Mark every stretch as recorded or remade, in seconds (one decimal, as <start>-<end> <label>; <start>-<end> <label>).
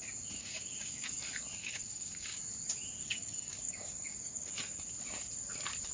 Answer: 0.0-0.4 recorded; 0.4-1.2 remade; 1.2-1.6 recorded; 1.6-2.4 remade; 2.4-3.0 recorded; 3.0-4.5 remade; 4.5-5.9 recorded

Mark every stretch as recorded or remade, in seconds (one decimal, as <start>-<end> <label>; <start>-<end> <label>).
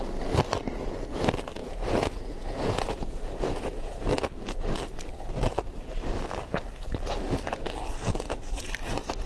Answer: 0.0-1.6 recorded; 1.6-4.1 remade; 4.1-9.3 recorded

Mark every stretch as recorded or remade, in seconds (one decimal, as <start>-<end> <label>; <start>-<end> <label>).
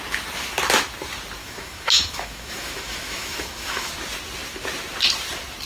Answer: 0.0-1.4 recorded; 1.4-3.9 remade; 3.9-5.6 recorded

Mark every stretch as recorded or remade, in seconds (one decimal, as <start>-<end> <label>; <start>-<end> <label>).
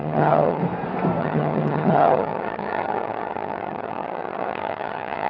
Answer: 0.0-0.6 remade; 0.6-1.2 recorded; 1.2-5.3 remade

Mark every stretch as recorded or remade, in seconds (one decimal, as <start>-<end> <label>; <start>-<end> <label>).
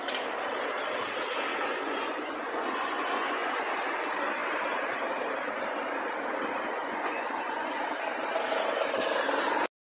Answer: 0.0-1.5 recorded; 1.5-3.7 remade; 3.7-6.8 recorded; 6.8-7.7 remade; 7.7-9.9 recorded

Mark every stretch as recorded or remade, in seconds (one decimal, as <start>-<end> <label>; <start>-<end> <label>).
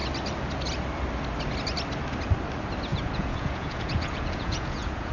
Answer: 0.0-2.9 recorded; 2.9-5.1 remade